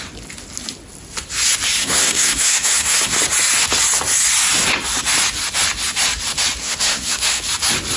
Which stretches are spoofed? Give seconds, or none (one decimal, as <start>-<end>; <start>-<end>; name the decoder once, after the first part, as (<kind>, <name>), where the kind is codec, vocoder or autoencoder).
1.8-3.2 (codec, SNAC); 6.6-7.4